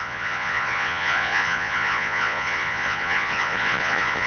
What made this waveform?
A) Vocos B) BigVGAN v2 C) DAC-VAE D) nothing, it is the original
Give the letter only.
A